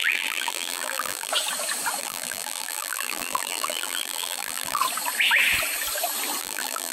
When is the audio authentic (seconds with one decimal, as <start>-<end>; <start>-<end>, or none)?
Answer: 1.3-2.0; 4.8-6.4

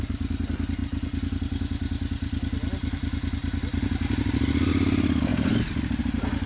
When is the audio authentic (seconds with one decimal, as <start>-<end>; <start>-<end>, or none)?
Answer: 0.0-6.5

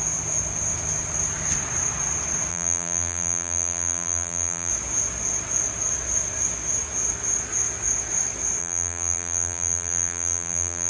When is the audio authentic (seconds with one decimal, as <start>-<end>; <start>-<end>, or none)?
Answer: 0.0-2.5; 4.7-8.6

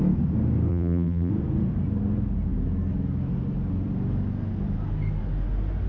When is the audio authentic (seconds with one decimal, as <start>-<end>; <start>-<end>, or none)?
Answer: 0.0-0.7; 1.3-5.9